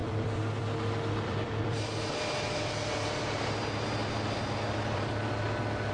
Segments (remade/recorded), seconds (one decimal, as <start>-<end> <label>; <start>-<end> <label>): 0.0-3.5 remade; 3.5-4.0 recorded; 4.0-5.9 remade